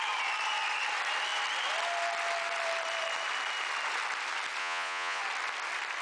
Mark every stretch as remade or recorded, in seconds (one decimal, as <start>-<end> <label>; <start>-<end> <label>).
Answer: 0.0-4.6 recorded; 4.6-5.2 remade; 5.2-6.0 recorded